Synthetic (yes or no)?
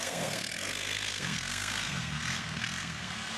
yes